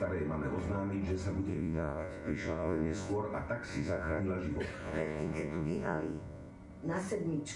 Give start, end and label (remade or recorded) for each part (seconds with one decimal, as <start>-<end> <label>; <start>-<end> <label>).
0.0-1.5 recorded; 1.5-3.1 remade; 3.1-3.7 recorded; 3.7-4.2 remade; 4.2-4.8 recorded; 4.8-6.5 remade; 6.5-7.6 recorded